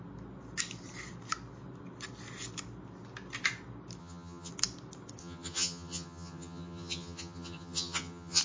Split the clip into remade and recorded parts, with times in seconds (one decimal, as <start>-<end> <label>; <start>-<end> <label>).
0.0-4.0 recorded; 4.0-4.5 remade; 4.5-5.2 recorded; 5.2-8.4 remade